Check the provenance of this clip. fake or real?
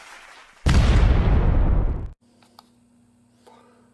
real